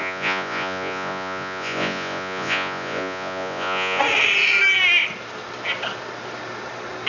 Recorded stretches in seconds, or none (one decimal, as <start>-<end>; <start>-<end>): 4.0-7.1